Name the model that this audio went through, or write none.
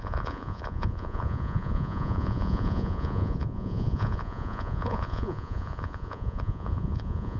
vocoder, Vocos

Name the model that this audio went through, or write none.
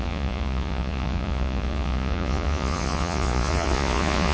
vocoder, Vocos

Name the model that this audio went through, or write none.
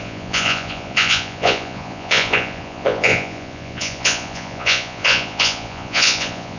vocoder, Vocos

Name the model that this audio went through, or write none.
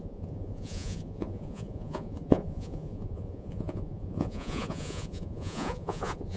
vocoder, Vocos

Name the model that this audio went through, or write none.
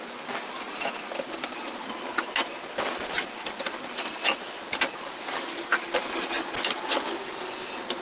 none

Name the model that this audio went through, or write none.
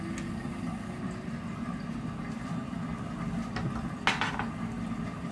none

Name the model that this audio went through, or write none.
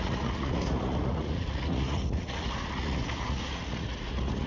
vocoder, Vocos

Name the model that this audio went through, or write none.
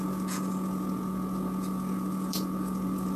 vocoder, Vocos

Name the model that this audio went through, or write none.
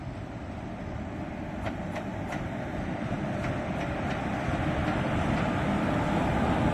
none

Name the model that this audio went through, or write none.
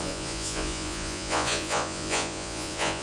vocoder, Vocos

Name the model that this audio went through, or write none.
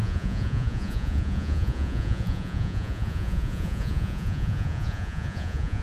vocoder, Vocos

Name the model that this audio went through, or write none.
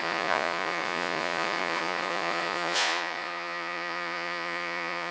vocoder, Vocos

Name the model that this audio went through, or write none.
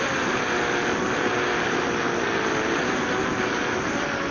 none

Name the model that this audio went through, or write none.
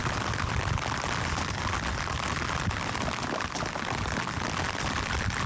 none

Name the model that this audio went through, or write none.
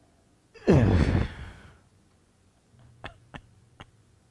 vocoder, Vocos